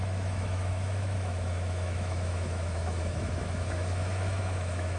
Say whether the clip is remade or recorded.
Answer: remade